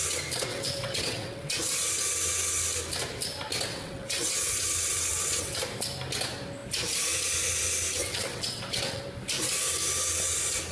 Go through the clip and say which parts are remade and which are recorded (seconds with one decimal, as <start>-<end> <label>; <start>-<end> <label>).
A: 0.0-0.5 recorded; 0.5-1.5 remade; 1.5-3.7 recorded; 3.7-5.6 remade; 5.6-8.0 recorded; 8.0-9.0 remade; 9.0-10.7 recorded